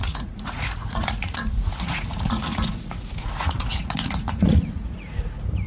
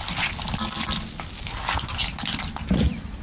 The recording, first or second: second